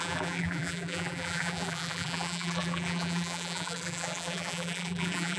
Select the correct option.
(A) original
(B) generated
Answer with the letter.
B